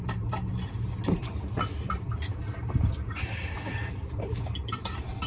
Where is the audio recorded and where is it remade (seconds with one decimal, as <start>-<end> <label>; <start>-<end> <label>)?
0.0-1.2 recorded; 1.2-4.4 remade; 4.4-5.3 recorded